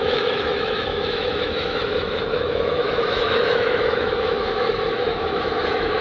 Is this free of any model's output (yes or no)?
no